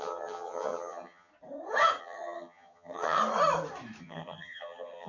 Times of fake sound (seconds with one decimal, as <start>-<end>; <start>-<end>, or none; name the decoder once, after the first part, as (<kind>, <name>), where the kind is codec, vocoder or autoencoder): 0.0-1.3 (vocoder, HiFi-GAN); 2.0-3.2; 4.0-5.1